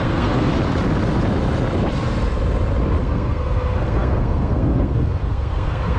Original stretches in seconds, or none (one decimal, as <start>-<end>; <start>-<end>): 0.5-3.0